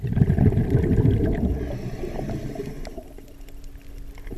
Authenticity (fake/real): real